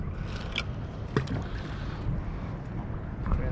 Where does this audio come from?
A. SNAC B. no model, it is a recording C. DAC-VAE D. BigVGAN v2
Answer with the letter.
B